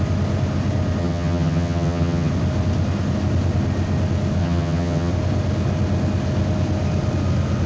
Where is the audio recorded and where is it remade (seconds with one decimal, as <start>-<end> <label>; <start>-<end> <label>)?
0.0-1.0 recorded; 1.0-2.3 remade; 2.3-4.4 recorded; 4.4-5.1 remade; 5.1-7.7 recorded